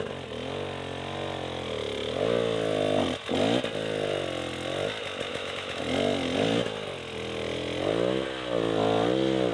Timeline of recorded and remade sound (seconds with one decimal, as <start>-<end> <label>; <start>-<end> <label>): 0.0-5.3 recorded; 5.3-5.8 remade; 5.8-9.5 recorded